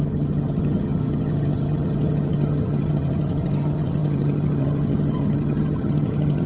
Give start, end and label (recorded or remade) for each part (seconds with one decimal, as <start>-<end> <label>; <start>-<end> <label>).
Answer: 0.0-6.5 remade